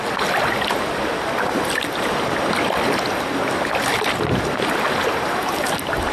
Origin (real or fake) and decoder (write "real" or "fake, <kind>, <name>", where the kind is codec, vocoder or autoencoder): real